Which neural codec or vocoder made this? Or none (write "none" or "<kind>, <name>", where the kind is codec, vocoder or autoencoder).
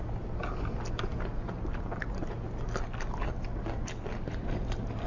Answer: none